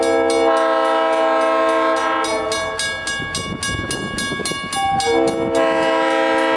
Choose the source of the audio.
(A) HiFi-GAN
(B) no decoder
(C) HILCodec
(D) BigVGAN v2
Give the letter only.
B